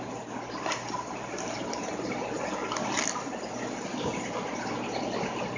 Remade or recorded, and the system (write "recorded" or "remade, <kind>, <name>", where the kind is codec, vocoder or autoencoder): recorded